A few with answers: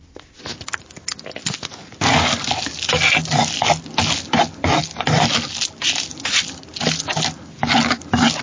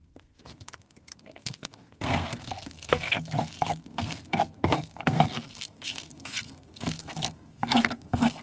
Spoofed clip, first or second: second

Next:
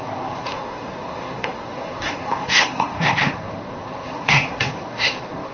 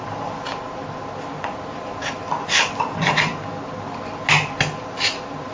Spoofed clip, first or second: first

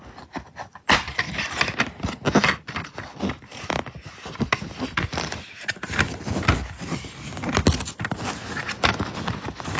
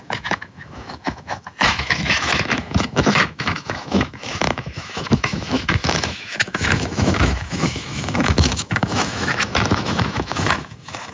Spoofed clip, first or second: second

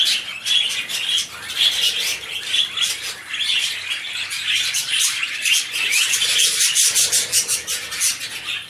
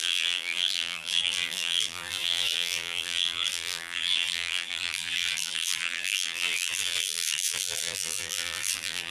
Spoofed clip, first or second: second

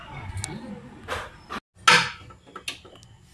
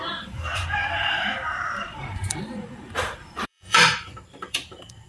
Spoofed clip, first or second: second